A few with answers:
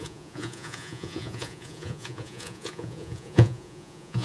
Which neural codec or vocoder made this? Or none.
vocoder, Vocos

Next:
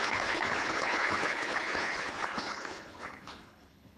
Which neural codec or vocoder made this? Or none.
codec, HILCodec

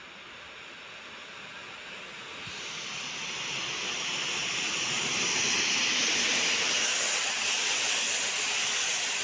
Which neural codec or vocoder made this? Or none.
none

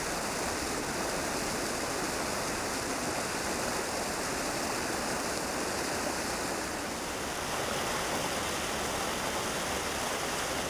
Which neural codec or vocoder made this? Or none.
none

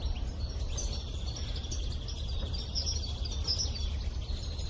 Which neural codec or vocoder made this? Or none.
none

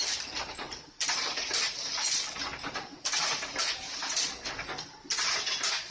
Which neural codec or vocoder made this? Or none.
none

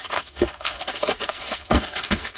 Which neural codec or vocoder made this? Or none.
codec, SNAC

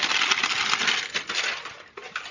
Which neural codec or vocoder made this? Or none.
none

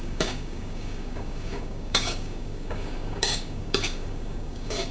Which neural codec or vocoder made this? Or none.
codec, DAC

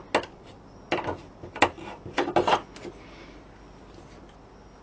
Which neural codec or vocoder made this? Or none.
none